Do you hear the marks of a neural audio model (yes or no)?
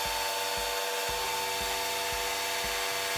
no